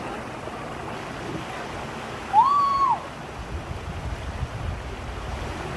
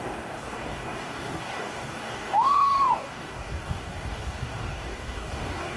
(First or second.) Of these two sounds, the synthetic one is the second